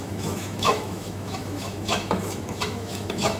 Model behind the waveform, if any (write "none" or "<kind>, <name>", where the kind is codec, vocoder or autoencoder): autoencoder, DAC-VAE